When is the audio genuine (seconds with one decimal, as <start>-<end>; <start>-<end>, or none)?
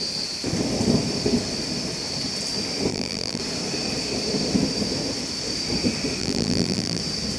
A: 0.0-2.9; 3.4-6.2; 7.0-7.4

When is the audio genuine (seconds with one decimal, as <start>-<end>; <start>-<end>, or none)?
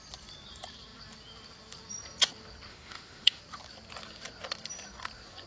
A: 0.0-2.7; 3.4-5.5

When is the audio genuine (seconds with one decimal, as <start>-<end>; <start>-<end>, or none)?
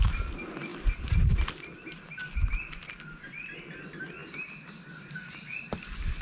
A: 0.0-4.2